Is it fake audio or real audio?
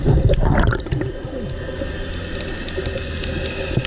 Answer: real